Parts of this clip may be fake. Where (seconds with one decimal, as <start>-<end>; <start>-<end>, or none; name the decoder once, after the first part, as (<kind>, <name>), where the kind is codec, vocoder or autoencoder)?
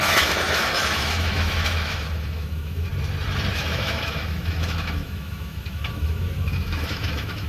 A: 0.0-2.9 (autoencoder, DAC-VAE); 3.5-7.5